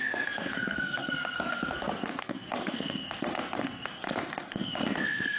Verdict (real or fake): fake